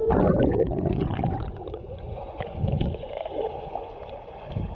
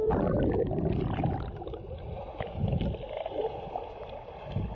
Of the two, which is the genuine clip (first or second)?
second